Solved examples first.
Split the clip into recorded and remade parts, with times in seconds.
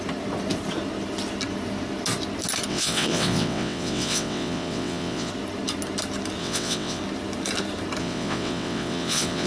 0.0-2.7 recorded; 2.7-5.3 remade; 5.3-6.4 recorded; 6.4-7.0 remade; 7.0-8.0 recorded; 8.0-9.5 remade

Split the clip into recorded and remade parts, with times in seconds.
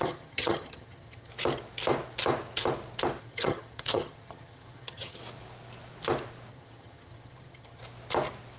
0.0-1.3 remade; 1.3-3.2 recorded; 3.2-5.2 remade; 5.2-6.5 recorded; 6.5-7.8 remade; 7.8-8.6 recorded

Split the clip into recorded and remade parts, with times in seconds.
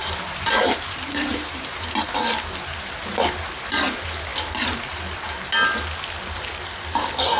0.0-1.9 remade; 1.9-7.4 recorded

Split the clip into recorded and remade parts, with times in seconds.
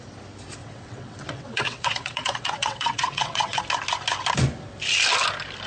0.0-0.6 recorded; 0.6-3.6 remade; 3.6-5.7 recorded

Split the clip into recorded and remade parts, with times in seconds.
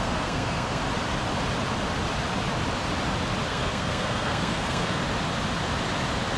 0.0-0.8 remade; 0.8-3.5 recorded; 3.5-5.0 remade; 5.0-6.4 recorded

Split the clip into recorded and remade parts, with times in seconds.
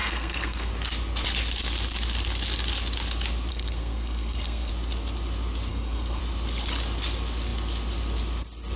0.0-0.7 remade; 0.7-3.5 recorded; 3.5-4.7 remade; 4.7-5.7 recorded; 5.7-6.2 remade; 6.2-8.8 recorded